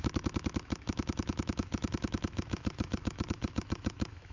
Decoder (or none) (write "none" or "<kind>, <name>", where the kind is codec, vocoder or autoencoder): autoencoder, DAC-VAE